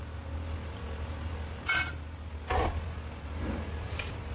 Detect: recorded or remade recorded